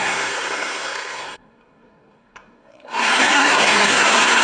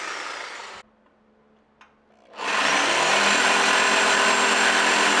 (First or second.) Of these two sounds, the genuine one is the second